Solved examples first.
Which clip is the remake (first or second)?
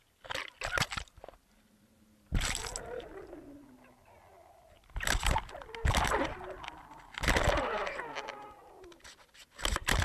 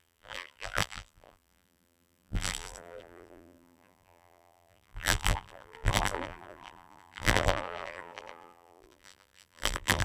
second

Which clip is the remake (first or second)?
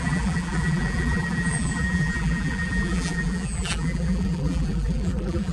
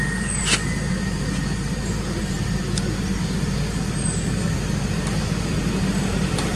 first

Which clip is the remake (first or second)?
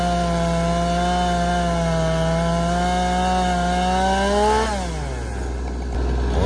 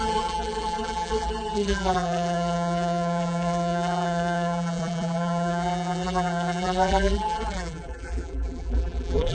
second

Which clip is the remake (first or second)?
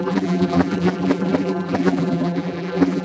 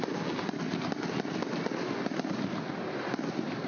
first